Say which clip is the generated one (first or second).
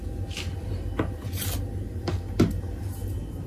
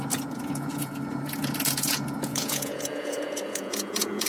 second